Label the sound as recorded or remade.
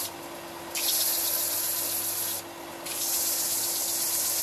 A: recorded